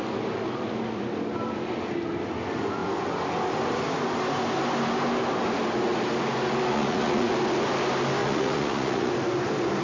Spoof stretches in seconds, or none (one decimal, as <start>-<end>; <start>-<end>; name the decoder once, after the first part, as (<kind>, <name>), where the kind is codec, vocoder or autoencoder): 6.7-7.3 (vocoder, Vocos); 8.2-9.1